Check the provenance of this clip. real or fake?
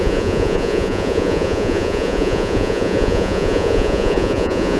fake